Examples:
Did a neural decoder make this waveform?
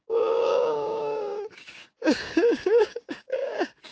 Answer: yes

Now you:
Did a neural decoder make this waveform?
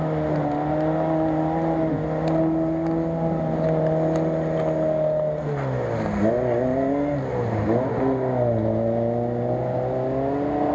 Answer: no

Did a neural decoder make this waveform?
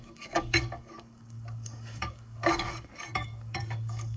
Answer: yes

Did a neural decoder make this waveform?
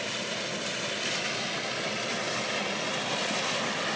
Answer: no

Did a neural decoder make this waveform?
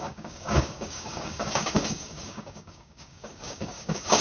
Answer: yes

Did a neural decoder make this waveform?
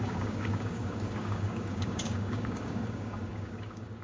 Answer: yes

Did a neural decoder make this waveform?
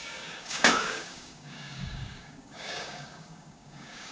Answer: yes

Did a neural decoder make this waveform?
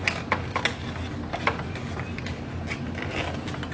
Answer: no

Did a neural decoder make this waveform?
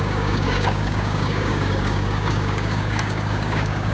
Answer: yes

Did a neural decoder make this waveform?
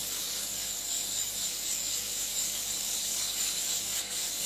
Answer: yes